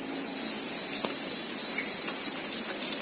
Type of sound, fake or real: real